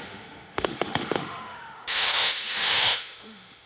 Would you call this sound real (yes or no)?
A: no